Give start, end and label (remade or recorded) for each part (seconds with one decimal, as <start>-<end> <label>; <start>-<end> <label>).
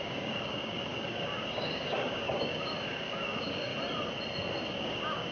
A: 0.0-3.7 remade; 3.7-4.8 recorded; 4.8-5.3 remade